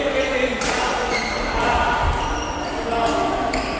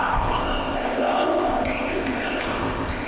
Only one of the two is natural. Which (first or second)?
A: first